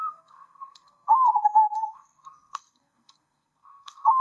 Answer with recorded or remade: remade